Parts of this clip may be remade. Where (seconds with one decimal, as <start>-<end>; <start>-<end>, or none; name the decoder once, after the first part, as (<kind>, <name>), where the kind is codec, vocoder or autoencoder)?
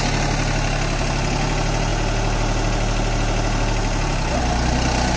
none